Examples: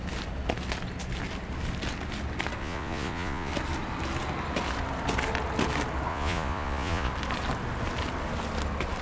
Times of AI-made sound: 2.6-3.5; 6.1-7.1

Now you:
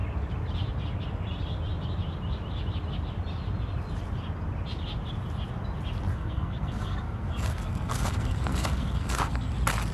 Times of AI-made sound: 6.1-9.5

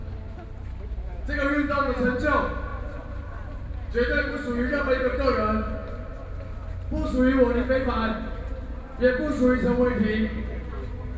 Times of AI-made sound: 2.7-4.8

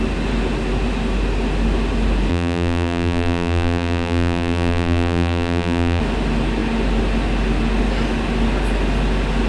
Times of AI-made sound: 2.3-6.0

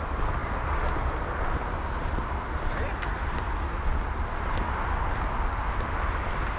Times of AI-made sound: none